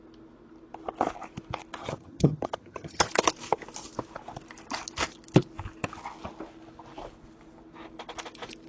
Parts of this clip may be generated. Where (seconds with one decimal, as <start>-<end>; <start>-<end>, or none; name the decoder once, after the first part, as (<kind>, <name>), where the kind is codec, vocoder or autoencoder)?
1.8-3.1 (vocoder, HiFi-GAN)